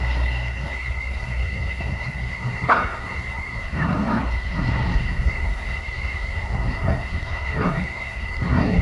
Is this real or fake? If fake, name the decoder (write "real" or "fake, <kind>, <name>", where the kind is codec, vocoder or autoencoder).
fake, codec, SNAC